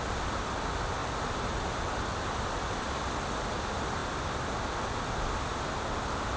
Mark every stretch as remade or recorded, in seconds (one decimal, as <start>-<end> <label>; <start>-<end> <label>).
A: 0.0-6.4 recorded